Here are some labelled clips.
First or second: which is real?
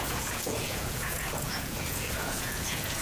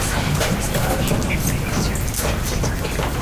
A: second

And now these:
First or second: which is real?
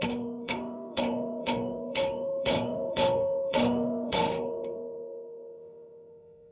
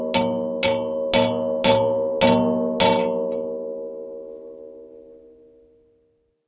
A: second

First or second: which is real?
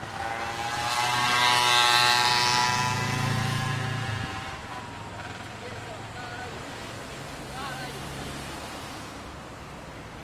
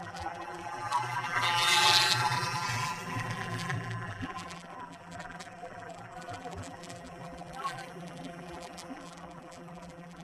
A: first